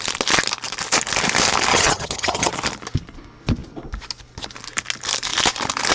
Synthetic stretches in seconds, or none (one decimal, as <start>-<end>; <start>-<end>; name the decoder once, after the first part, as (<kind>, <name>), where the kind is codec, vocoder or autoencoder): 1.7-2.5 (vocoder, HiFi-GAN)